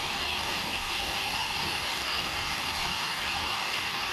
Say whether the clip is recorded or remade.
remade